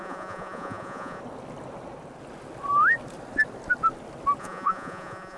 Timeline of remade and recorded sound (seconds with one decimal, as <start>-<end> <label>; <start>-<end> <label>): 0.0-1.2 remade; 1.2-4.4 recorded; 4.4-5.4 remade